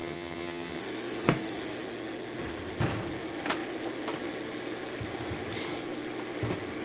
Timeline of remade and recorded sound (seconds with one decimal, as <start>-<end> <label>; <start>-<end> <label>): 0.0-0.8 remade; 0.8-6.8 recorded